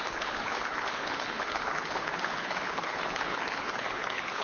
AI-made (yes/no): yes